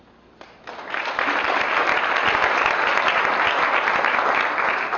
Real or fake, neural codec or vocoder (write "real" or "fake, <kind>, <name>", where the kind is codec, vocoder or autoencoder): real